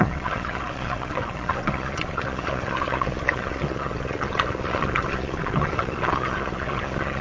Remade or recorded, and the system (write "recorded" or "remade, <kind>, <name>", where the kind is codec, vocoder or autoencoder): remade, vocoder, Vocos